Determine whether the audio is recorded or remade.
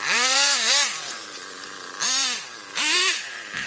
remade